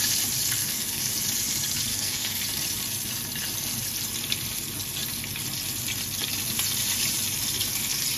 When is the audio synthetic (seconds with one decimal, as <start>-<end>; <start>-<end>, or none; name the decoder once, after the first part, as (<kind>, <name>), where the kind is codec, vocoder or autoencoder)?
0.6-1.1 (codec, SNAC); 1.9-2.4